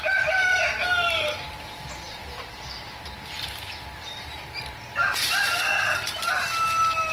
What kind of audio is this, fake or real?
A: fake